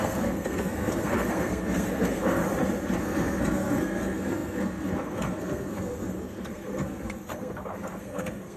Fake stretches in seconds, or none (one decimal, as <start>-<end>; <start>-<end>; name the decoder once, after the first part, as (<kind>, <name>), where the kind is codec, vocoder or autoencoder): 0.0-2.4 (codec, SNAC); 3.0-8.6